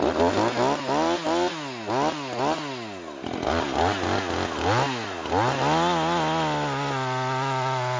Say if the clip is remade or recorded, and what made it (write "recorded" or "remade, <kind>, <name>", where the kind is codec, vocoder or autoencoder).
recorded